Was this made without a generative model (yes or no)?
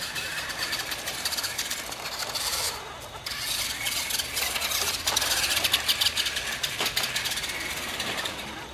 yes